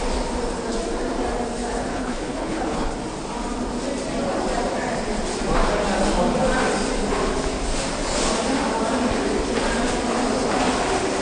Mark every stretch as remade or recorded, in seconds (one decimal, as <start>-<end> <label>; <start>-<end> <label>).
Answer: 0.0-1.9 recorded; 1.9-2.9 remade; 2.9-11.2 recorded

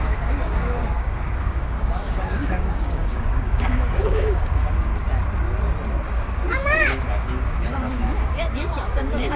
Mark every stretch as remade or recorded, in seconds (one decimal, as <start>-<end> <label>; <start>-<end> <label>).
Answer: 0.0-4.9 remade; 4.9-6.1 recorded; 6.1-9.4 remade

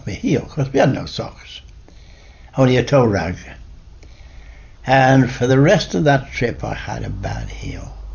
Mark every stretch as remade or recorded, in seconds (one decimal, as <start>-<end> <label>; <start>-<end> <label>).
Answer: 0.0-5.9 recorded; 5.9-6.6 remade; 6.6-8.1 recorded

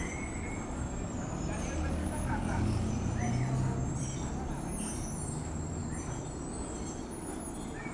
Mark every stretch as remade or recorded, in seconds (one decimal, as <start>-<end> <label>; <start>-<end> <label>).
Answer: 0.0-2.0 recorded; 2.0-2.9 remade; 2.9-7.9 recorded

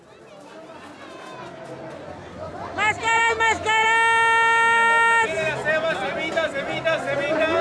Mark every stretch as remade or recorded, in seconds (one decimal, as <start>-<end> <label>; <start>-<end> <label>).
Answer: 0.0-7.6 recorded